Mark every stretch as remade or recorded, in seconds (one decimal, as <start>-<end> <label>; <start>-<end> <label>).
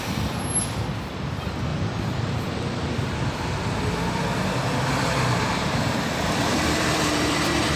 0.0-1.7 recorded; 1.7-3.5 remade; 3.5-5.6 recorded; 5.6-7.8 remade